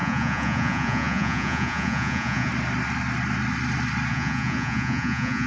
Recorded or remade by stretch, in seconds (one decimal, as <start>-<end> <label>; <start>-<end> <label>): 0.0-2.5 remade; 2.5-4.1 recorded; 4.1-5.5 remade